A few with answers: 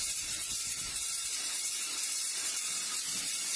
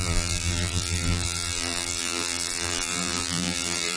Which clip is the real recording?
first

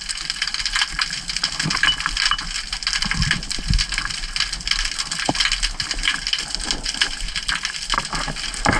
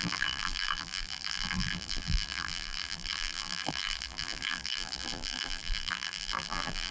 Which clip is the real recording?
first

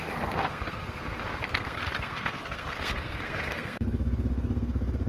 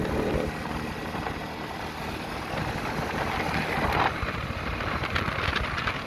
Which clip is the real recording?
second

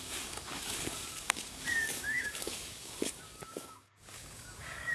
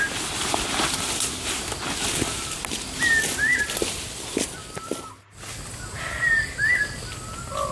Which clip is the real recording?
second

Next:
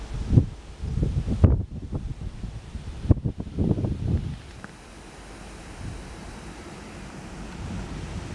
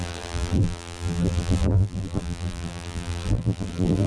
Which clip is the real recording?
first